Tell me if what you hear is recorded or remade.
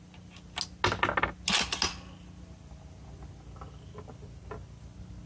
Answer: recorded